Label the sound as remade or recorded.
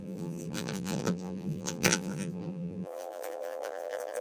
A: remade